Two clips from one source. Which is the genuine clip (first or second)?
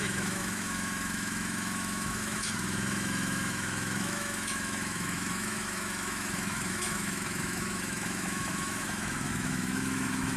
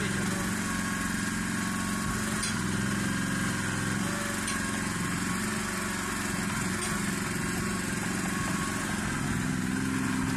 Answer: second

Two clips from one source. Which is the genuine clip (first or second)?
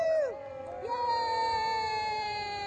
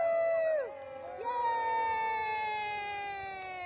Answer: second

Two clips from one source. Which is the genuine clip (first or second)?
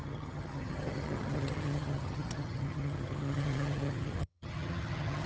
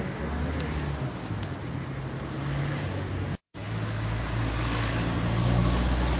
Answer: second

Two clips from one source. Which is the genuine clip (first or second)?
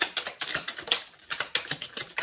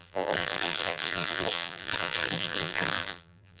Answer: first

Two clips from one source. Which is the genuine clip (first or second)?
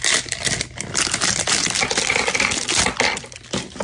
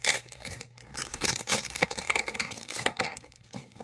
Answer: first